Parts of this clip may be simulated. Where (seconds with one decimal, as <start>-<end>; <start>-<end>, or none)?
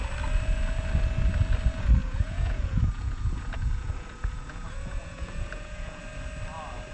2.0-6.0